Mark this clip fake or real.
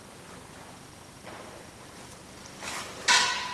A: real